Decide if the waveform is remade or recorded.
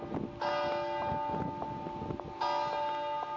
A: recorded